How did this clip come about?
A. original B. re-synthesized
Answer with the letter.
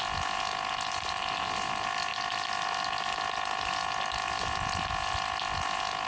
A